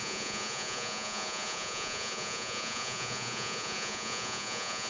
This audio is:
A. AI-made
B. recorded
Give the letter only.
A